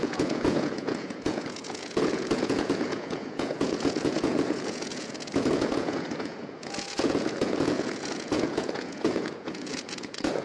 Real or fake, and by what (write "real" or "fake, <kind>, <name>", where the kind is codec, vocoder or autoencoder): fake, vocoder, Vocos